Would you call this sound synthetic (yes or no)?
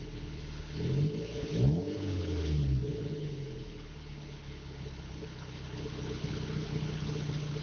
yes